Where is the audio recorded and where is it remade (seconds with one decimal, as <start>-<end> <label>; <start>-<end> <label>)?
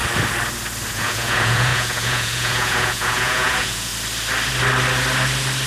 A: 0.0-0.9 recorded; 0.9-3.9 remade; 3.9-5.7 recorded